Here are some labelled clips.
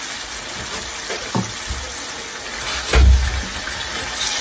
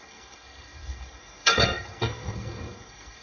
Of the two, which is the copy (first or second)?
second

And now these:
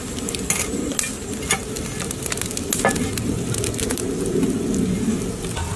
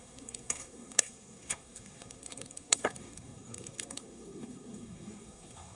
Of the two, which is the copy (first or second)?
second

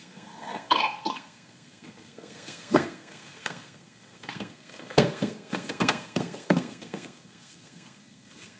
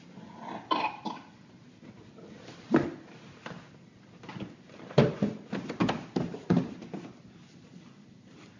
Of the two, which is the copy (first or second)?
first